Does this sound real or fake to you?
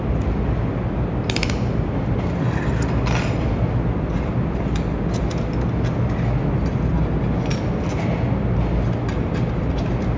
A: real